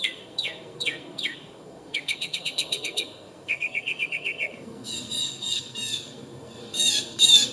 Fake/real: fake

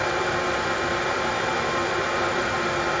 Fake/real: real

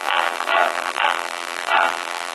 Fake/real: fake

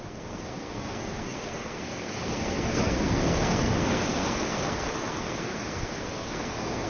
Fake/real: fake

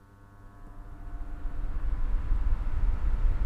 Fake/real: real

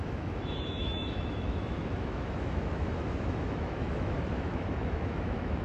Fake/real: fake